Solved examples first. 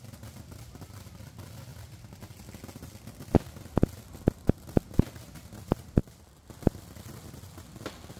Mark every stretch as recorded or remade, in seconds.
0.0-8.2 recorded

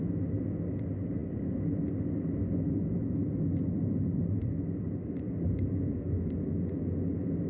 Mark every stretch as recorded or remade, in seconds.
0.0-7.5 recorded

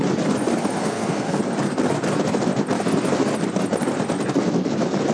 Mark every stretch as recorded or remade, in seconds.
0.0-0.8 recorded; 0.8-1.4 remade; 1.4-5.1 recorded

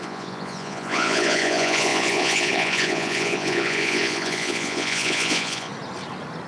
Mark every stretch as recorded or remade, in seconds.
0.0-5.7 remade; 5.7-6.5 recorded

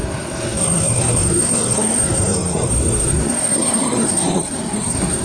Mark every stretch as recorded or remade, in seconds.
0.0-5.2 remade